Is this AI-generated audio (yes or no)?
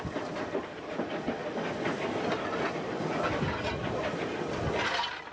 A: no